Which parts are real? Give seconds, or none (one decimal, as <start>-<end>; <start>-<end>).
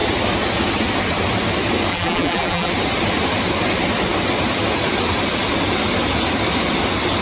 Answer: 0.0-1.9; 2.7-7.2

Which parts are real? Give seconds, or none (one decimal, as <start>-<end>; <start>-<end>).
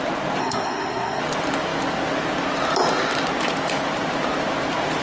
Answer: 0.0-0.4; 1.2-5.0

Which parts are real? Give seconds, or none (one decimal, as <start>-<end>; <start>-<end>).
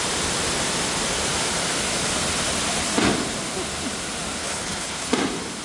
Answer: 0.0-4.4; 5.1-5.6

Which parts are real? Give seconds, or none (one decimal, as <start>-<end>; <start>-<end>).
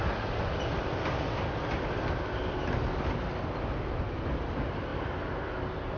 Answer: 0.0-6.0